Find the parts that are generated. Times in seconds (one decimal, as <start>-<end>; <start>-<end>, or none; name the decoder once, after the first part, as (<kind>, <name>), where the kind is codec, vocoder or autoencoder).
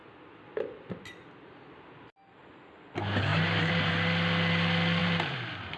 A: 3.3-3.9 (vocoder, BigVGAN v2); 5.0-5.8